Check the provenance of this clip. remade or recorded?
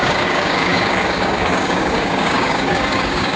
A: remade